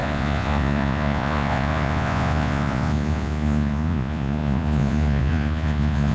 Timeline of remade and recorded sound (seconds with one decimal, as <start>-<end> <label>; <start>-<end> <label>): 0.0-6.1 remade